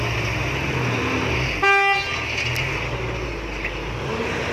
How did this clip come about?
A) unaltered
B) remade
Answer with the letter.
A